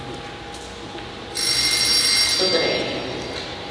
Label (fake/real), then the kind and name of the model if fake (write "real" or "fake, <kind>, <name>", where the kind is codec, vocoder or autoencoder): real